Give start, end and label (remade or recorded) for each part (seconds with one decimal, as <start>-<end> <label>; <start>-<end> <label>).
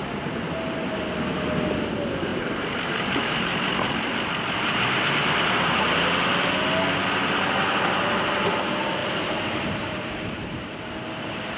0.0-2.3 recorded; 2.3-4.3 remade; 4.3-9.0 recorded; 9.0-10.9 remade; 10.9-11.6 recorded